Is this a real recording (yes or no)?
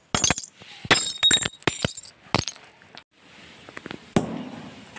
yes